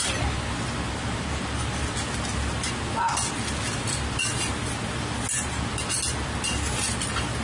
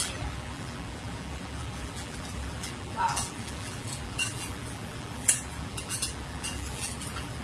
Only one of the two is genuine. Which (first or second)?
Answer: first